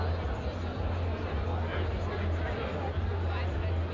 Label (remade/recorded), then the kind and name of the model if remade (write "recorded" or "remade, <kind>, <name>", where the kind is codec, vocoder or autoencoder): recorded